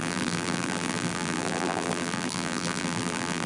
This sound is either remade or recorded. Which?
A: remade